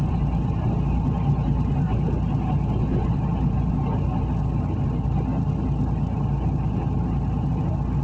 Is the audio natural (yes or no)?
yes